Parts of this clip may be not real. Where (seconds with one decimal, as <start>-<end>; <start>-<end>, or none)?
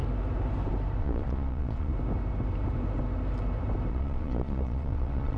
1.0-1.9; 3.9-5.4